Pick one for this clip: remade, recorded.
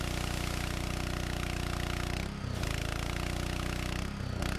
recorded